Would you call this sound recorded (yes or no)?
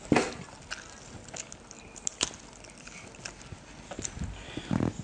yes